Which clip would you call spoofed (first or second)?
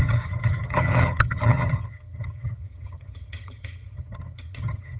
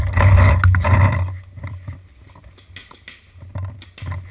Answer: first